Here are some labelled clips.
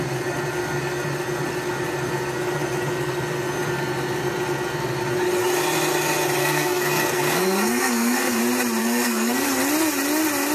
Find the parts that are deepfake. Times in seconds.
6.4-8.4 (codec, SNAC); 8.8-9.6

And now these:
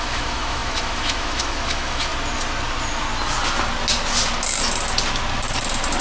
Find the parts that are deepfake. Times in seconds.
0.0-2.1 (autoencoder, DAC-VAE)

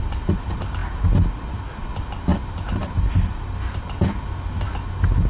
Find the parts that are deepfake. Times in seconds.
2.3-3.8 (vocoder, BigVGAN v2)

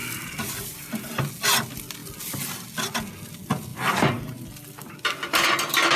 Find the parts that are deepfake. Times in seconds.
0.0-1.3 (vocoder, BigVGAN v2)

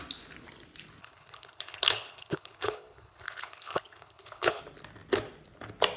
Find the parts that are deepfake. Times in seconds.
1.0-4.6 (codec, HILCodec)

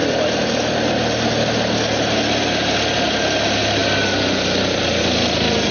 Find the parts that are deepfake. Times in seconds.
none